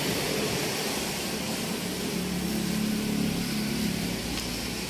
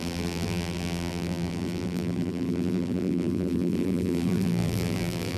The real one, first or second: first